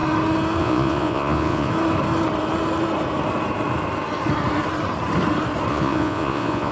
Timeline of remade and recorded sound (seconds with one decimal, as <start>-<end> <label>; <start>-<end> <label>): 0.0-0.6 recorded; 0.6-1.7 remade; 1.7-5.7 recorded; 5.7-6.7 remade